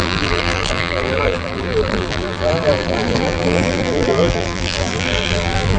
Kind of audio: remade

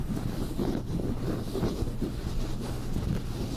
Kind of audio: recorded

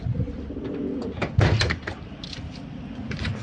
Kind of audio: remade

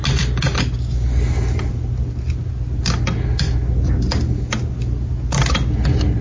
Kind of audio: recorded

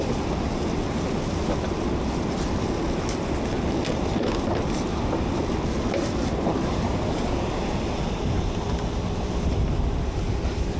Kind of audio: recorded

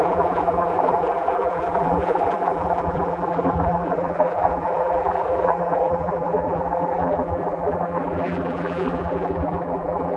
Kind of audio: remade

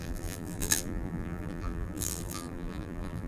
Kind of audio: remade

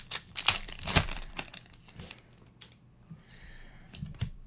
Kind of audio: remade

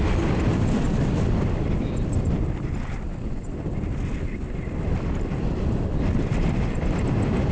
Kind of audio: remade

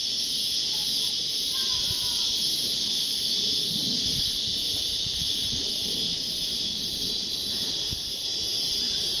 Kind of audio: remade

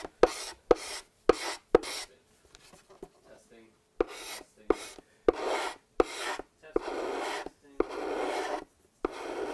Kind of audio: recorded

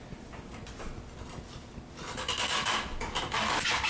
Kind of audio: recorded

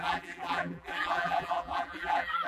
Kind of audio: remade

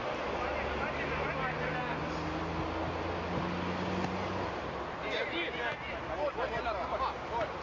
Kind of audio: recorded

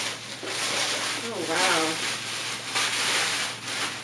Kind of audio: remade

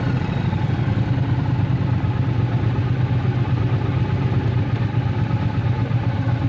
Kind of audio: recorded